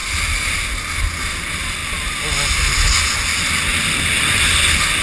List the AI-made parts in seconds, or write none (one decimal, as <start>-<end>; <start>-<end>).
none